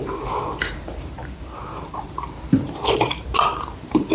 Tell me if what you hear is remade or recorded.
remade